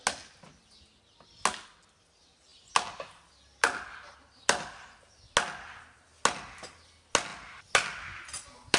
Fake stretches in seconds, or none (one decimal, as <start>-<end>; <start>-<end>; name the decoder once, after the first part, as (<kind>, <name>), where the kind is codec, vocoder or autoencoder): none